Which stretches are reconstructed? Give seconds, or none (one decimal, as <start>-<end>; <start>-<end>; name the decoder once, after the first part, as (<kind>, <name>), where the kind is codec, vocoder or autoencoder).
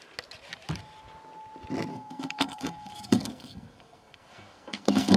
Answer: 1.9-5.2 (codec, SNAC)